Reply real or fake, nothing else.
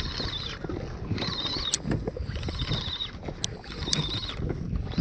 real